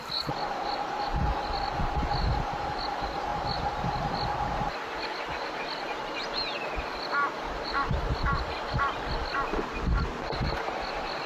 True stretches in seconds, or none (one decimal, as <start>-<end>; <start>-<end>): 0.0-11.3